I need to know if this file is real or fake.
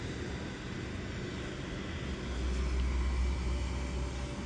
real